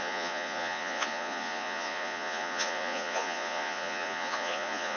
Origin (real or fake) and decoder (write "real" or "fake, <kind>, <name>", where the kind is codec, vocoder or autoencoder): fake, vocoder, Vocos